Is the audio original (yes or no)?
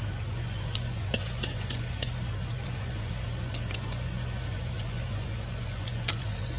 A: no